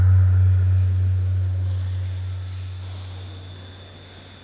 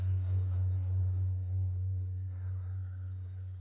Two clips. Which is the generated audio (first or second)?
second